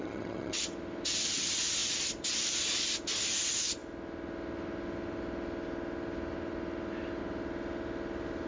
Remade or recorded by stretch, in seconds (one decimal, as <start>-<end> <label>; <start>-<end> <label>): 0.0-0.6 remade; 0.6-8.5 recorded